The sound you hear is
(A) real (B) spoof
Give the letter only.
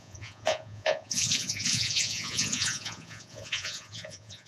B